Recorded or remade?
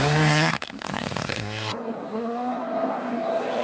remade